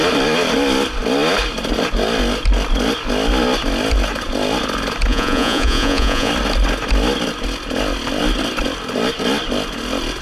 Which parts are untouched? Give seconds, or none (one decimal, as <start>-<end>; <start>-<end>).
0.0-5.1; 6.3-10.2